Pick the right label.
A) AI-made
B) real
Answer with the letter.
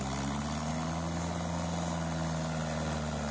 B